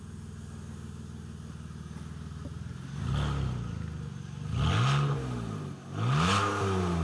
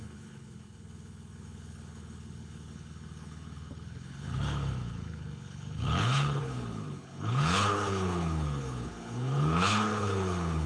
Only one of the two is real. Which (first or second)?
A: first